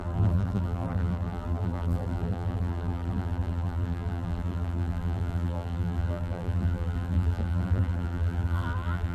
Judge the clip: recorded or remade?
remade